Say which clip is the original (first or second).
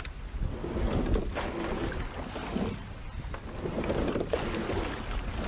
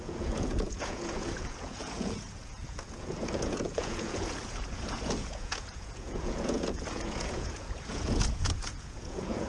first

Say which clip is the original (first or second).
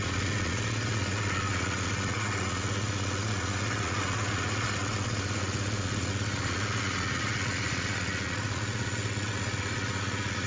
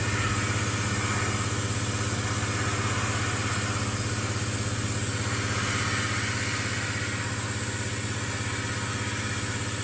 second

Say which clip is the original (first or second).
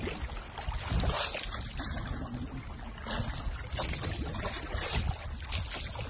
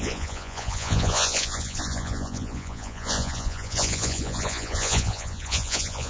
first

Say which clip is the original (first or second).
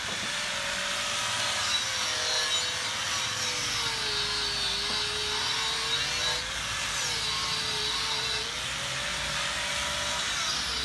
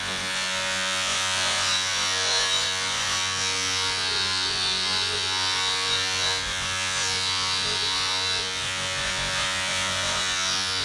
first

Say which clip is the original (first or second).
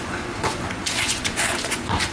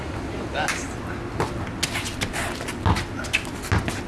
second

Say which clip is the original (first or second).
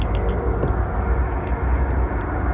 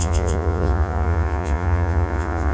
first